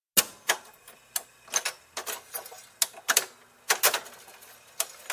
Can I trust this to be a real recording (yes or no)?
yes